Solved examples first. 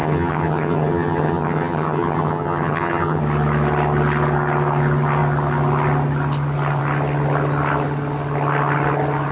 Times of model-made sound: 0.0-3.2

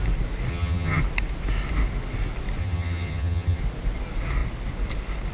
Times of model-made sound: 0.5-1.0; 2.6-3.6

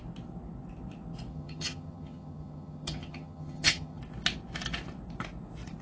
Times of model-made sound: 1.3-4.0

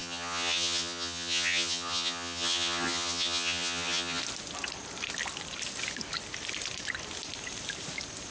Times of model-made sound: 0.0-4.2